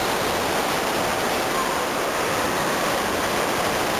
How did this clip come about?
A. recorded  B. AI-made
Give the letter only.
A